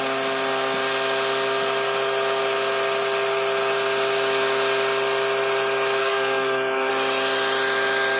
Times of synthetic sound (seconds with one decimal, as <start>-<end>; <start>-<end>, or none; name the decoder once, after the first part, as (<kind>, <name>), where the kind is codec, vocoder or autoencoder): 6.0-6.9 (codec, SNAC)